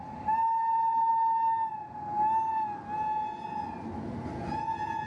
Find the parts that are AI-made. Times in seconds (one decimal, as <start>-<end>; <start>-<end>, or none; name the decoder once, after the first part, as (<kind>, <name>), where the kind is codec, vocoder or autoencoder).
none